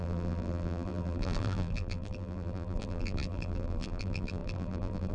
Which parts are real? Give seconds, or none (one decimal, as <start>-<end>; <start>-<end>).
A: none